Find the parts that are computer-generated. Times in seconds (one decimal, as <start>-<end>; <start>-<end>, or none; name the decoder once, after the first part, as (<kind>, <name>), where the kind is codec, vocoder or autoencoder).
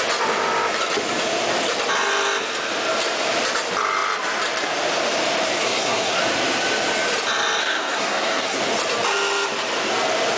5.6-6.2 (codec, SNAC); 7.6-8.6